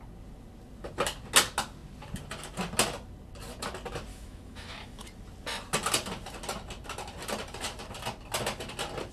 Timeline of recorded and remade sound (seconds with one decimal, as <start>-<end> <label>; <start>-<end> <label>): 0.0-4.1 recorded; 4.1-5.0 remade; 5.0-9.1 recorded